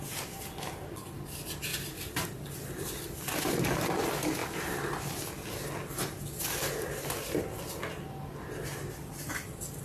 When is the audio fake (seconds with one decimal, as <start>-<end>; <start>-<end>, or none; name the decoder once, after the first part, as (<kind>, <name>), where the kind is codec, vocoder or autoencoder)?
1.7-3.4 (vocoder, BigVGAN v2)